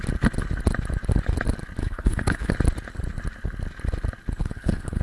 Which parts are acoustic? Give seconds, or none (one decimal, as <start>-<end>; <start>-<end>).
0.0-1.8; 2.5-4.4